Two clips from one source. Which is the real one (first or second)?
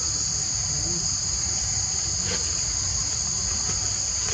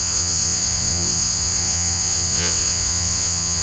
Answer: first